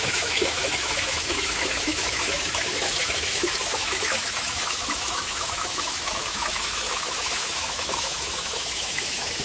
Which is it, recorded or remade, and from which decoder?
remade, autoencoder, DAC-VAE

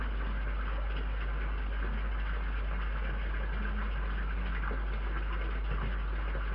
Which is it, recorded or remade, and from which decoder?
recorded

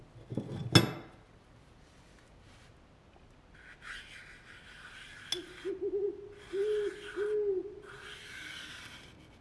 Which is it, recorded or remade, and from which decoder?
recorded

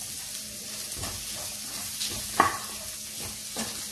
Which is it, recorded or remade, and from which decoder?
recorded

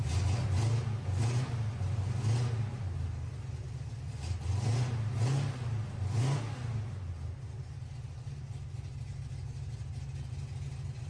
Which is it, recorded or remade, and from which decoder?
recorded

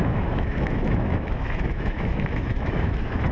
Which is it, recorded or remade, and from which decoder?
remade, autoencoder, DAC-VAE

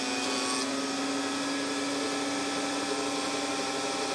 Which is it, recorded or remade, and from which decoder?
recorded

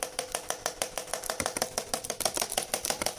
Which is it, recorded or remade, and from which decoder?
recorded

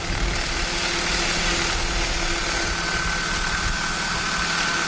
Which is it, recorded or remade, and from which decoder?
recorded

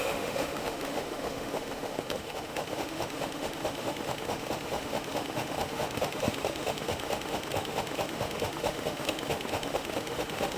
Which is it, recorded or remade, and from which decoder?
remade, autoencoder, DAC-VAE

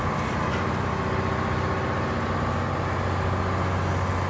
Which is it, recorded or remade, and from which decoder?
recorded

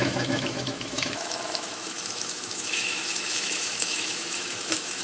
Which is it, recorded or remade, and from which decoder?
remade, autoencoder, DAC-VAE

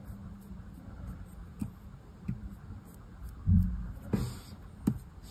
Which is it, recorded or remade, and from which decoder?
recorded